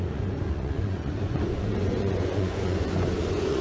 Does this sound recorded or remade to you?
remade